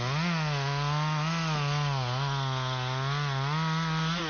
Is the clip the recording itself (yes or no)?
yes